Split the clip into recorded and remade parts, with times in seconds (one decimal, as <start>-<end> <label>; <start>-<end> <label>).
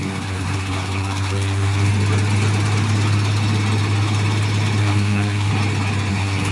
0.0-1.9 remade; 1.9-4.8 recorded; 4.8-5.5 remade; 5.5-6.1 recorded; 6.1-6.5 remade